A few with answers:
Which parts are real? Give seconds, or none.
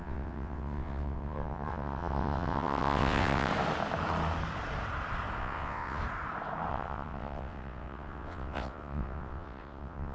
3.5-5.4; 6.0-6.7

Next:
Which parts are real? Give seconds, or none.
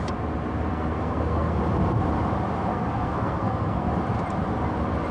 0.0-0.7; 1.6-2.7; 3.9-5.1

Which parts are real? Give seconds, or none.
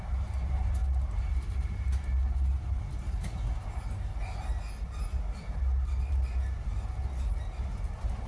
0.0-8.3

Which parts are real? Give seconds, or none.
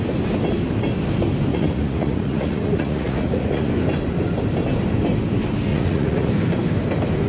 0.0-1.5; 3.7-5.7; 6.3-7.3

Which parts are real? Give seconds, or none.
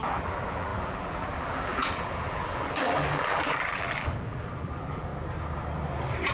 5.1-6.3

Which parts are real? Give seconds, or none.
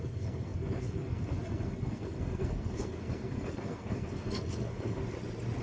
5.0-5.6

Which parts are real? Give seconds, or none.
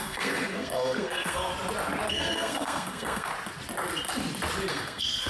1.5-2.1; 3.3-4.7